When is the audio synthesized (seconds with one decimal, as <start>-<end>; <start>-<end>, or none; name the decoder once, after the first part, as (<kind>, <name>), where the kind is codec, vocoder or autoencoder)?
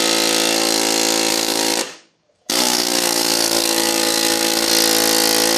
1.3-4.7 (codec, DAC)